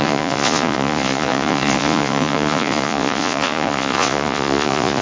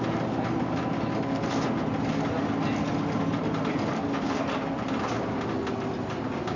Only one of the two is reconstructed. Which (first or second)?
first